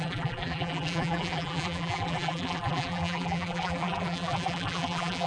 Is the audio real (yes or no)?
no